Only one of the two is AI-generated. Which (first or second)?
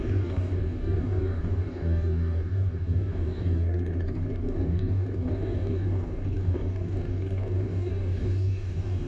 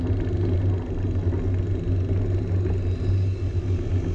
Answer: first